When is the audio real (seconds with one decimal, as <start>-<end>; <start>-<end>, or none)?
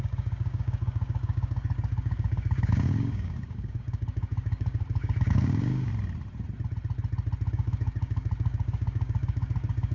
5.9-7.5